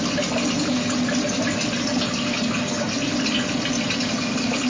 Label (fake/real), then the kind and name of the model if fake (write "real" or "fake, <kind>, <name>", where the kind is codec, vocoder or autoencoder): real